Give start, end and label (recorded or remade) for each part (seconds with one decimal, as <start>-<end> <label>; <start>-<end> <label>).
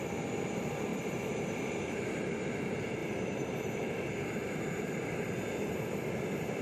0.0-0.9 recorded; 0.9-2.2 remade; 2.2-3.0 recorded; 3.0-3.9 remade; 3.9-6.6 recorded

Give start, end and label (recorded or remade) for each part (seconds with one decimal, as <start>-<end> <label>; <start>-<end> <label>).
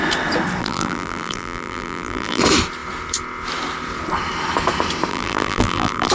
0.0-0.6 recorded; 0.6-2.4 remade; 2.4-5.1 recorded; 5.1-6.1 remade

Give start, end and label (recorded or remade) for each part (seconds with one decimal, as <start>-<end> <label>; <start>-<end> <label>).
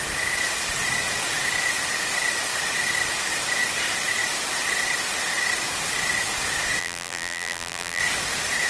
0.0-6.8 recorded; 6.8-8.0 remade; 8.0-8.7 recorded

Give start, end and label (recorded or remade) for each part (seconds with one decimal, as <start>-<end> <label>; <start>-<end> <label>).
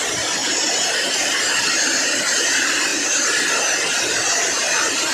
0.0-5.1 recorded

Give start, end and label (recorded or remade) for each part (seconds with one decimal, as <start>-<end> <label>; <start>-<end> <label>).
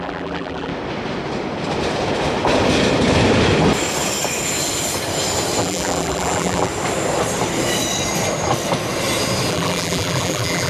0.0-0.7 remade; 0.7-5.6 recorded; 5.6-6.7 remade; 6.7-9.5 recorded; 9.5-10.7 remade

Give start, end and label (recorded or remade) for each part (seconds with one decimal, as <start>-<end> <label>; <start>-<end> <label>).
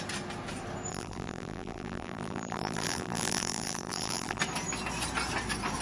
0.0-0.9 recorded; 0.9-4.4 remade; 4.4-5.8 recorded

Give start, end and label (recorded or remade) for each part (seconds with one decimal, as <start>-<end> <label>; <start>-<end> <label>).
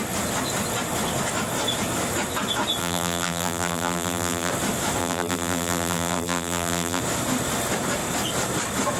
0.0-2.8 recorded; 2.8-4.5 remade; 4.5-5.0 recorded; 5.0-7.0 remade; 7.0-9.0 recorded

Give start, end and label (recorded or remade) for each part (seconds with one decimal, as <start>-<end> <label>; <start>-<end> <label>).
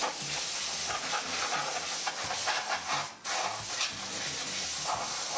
0.0-5.4 recorded